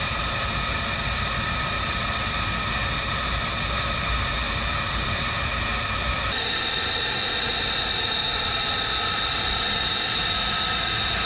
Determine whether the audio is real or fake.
real